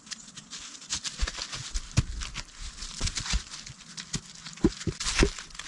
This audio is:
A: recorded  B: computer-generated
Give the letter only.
A